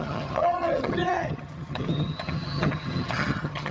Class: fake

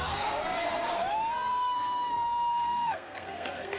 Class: fake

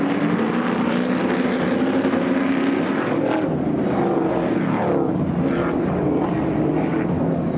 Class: real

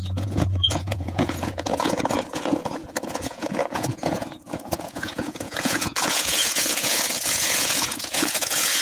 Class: fake